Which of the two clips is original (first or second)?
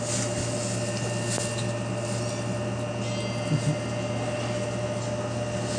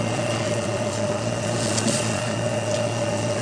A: first